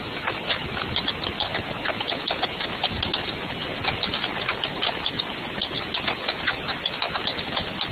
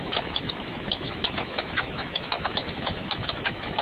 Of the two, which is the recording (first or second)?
first